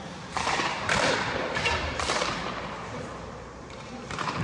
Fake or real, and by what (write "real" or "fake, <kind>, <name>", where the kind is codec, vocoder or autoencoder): fake, vocoder, BigVGAN v2